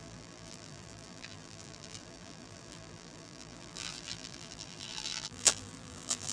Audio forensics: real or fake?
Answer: fake